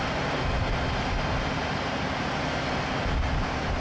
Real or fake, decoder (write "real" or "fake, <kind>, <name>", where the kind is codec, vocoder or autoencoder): real